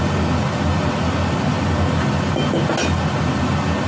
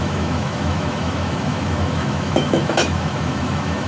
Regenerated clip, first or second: second